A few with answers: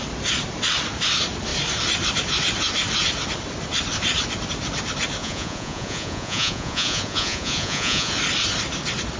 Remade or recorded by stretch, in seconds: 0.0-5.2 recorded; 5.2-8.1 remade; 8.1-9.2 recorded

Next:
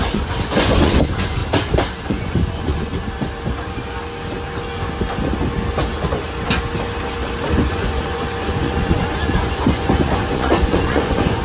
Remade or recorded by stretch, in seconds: 0.0-1.4 remade; 1.4-2.0 recorded; 2.0-2.9 remade; 2.9-7.7 recorded; 7.7-11.4 remade

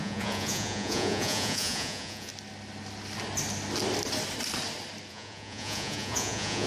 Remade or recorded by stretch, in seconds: 0.0-2.3 remade; 2.3-5.1 recorded; 5.1-6.7 remade

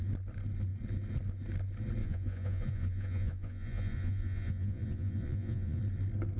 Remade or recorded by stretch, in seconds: 0.0-2.0 recorded; 2.0-5.8 remade; 5.8-6.4 recorded